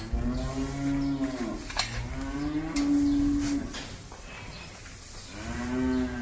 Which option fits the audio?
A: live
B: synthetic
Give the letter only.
A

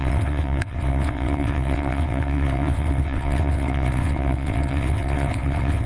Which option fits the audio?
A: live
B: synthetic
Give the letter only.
B